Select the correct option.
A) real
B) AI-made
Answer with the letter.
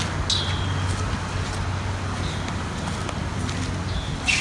A